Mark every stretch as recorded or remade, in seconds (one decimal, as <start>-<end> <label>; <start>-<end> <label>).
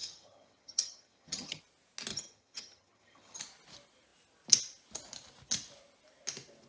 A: 0.0-1.6 remade; 1.6-2.1 recorded; 2.1-3.4 remade; 3.4-6.7 recorded